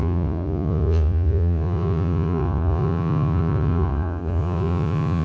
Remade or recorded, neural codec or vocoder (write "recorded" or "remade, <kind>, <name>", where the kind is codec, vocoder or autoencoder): remade, vocoder, Vocos